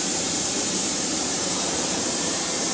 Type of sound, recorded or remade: remade